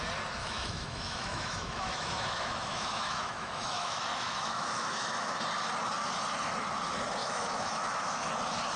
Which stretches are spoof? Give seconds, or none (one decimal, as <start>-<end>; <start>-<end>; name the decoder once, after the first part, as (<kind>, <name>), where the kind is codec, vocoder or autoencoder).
0.4-5.4 (autoencoder, DAC-VAE); 7.2-8.3